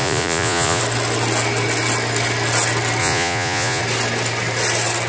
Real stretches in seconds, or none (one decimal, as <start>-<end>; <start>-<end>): 0.8-3.0; 3.8-5.1